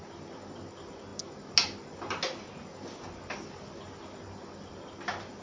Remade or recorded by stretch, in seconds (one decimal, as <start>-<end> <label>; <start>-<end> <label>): 0.0-5.4 recorded